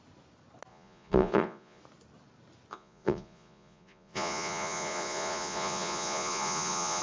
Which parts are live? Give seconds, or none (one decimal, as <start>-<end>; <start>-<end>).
0.0-0.7; 1.8-2.7